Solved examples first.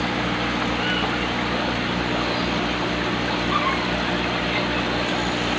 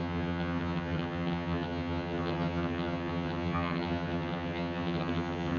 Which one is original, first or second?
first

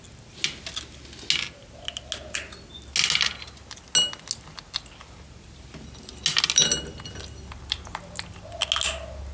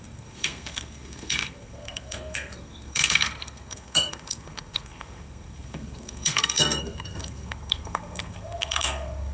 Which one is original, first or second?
first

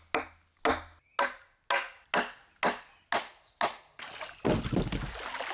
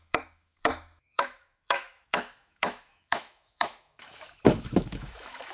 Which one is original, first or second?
first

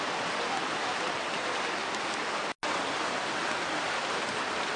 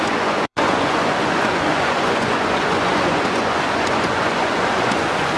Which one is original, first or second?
first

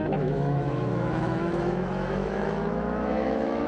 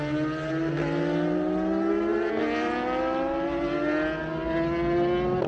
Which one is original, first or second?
second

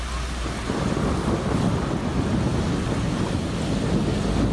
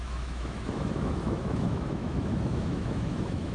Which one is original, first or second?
first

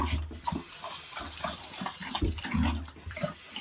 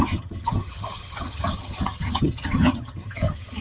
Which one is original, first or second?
first